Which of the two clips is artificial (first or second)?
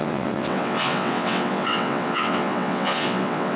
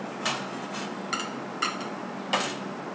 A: first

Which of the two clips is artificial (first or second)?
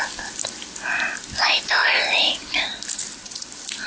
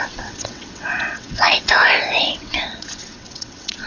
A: second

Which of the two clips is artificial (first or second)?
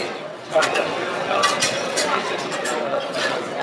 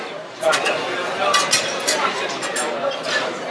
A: first